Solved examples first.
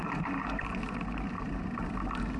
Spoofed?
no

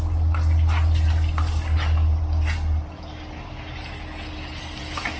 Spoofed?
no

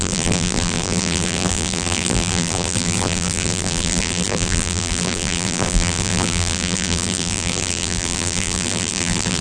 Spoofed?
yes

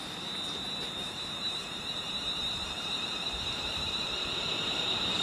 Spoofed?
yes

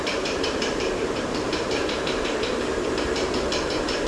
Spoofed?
yes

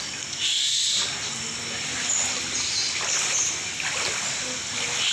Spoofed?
no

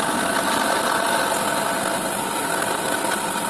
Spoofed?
no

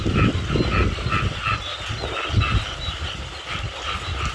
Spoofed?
no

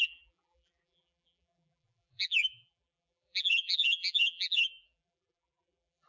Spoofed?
yes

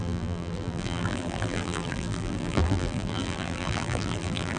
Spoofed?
yes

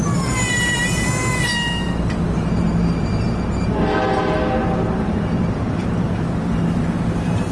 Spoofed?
yes